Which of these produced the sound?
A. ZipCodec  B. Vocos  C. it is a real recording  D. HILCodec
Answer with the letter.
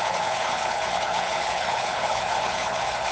D